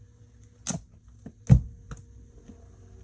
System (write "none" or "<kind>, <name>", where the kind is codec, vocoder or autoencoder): none